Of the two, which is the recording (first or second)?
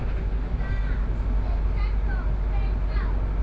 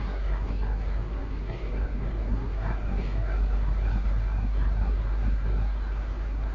first